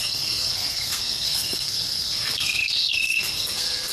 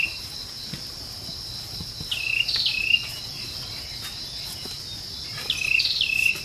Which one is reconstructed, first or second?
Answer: first